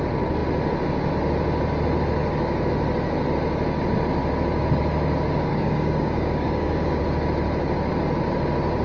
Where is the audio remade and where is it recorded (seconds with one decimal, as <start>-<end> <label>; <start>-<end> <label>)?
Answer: 0.0-5.5 recorded; 5.5-7.0 remade; 7.0-8.8 recorded

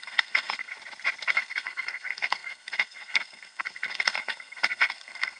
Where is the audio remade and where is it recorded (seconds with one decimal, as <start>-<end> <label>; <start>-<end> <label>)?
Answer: 0.0-0.7 remade; 0.7-1.3 recorded; 1.3-5.4 remade

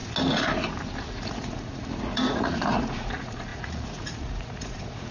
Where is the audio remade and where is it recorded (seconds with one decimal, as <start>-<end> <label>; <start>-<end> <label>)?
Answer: 0.0-1.0 recorded; 1.0-5.1 remade